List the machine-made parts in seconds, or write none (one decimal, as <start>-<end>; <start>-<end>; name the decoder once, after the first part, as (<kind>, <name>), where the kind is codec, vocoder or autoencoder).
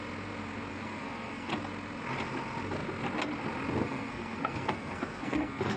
0.7-1.5 (codec, SNAC); 3.8-5.8